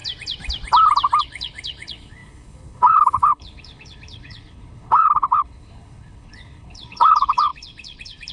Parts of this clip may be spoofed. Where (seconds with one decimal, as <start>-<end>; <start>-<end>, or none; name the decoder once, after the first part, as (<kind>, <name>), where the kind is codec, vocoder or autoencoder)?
1.2-8.3 (codec, HILCodec)